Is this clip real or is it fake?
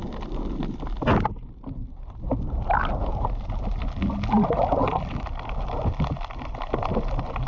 real